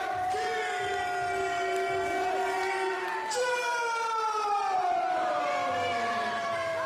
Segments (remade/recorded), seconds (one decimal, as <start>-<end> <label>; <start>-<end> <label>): 0.0-6.9 recorded